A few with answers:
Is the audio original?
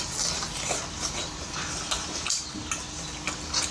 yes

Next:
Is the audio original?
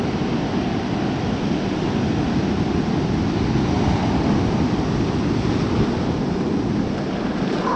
yes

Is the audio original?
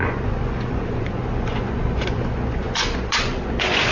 no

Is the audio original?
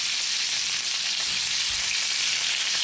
yes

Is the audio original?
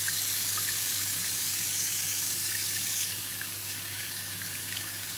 no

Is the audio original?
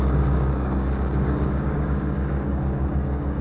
no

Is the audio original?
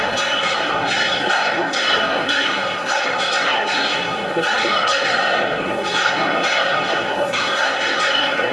no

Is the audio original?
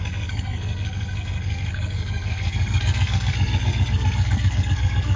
no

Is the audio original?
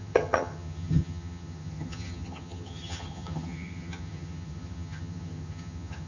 no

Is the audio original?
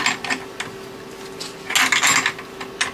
yes